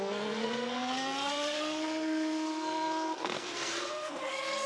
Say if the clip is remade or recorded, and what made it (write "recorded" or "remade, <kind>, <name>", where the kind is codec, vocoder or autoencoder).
remade, codec, SNAC